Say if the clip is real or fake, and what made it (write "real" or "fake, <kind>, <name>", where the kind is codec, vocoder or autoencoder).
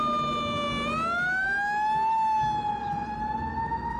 real